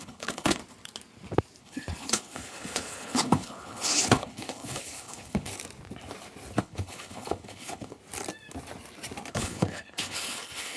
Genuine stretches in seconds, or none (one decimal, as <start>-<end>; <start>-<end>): 0.6-1.6; 5.5-6.6; 8.0-9.3